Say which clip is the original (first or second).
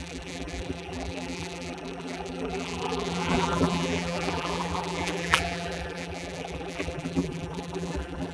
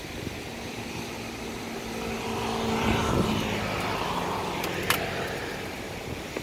second